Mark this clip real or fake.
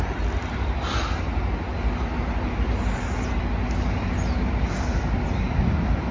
real